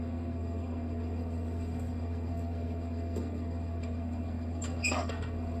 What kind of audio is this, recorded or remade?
remade